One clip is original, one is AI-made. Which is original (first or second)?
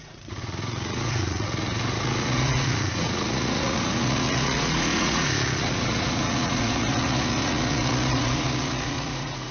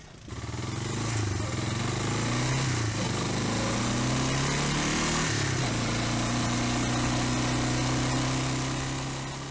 second